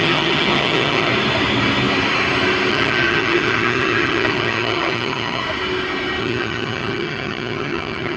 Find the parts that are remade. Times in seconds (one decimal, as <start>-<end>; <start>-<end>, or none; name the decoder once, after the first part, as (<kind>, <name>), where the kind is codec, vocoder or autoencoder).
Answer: 0.0-1.1 (vocoder, HiFi-GAN); 2.7-5.4; 6.2-8.2